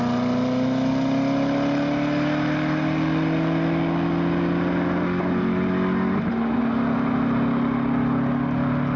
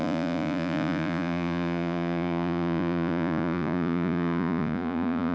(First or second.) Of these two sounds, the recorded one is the first